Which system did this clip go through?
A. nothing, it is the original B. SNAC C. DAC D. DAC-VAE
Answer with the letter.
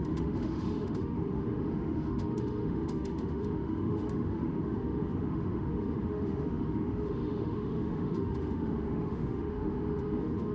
D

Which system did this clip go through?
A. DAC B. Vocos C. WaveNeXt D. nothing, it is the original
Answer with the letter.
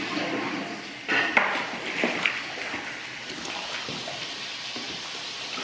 D